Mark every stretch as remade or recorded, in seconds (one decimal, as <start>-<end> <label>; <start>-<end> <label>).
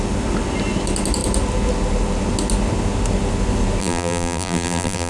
0.0-3.8 recorded; 3.8-5.1 remade